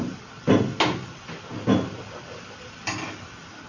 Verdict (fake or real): real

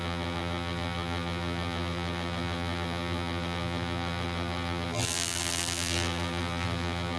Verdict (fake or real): fake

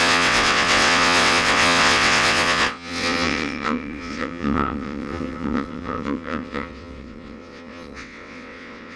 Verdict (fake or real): fake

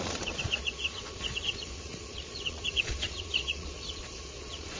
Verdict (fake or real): fake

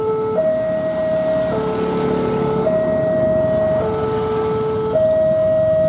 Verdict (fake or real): real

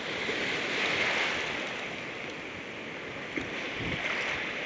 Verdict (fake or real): real